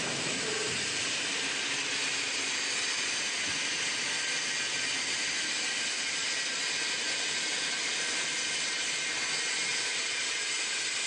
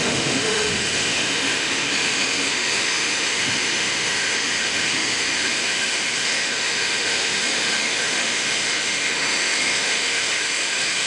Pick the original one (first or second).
first